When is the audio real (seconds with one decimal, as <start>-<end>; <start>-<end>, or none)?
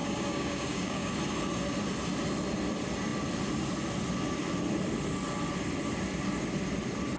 1.1-7.2